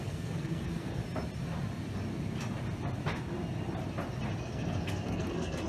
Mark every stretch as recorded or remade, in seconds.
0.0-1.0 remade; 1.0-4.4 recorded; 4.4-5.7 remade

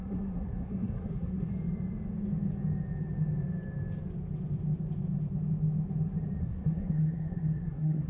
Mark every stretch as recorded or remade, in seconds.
0.0-1.5 remade; 1.5-6.4 recorded; 6.4-8.1 remade